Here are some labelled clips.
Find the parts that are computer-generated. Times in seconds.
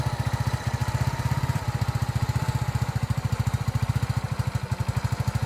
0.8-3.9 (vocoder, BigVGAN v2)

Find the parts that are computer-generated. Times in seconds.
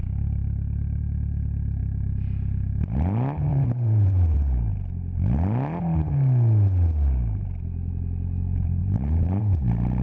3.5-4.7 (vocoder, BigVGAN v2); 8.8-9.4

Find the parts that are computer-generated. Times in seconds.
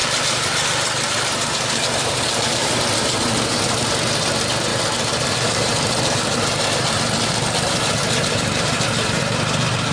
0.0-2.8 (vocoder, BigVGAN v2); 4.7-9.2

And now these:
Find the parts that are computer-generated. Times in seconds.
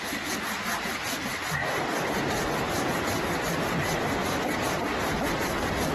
1.6-3.2 (vocoder, BigVGAN v2); 4.2-4.8